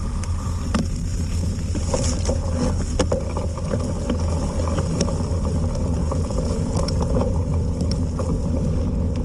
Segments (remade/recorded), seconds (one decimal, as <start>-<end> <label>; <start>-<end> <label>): 0.0-6.0 recorded; 6.0-7.3 remade; 7.3-9.2 recorded